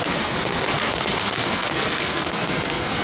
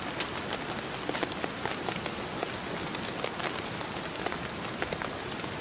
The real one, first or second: second